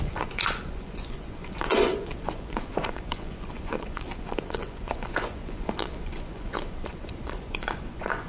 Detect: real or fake fake